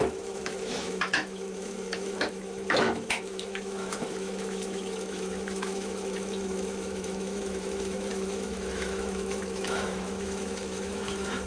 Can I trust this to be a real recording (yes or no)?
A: no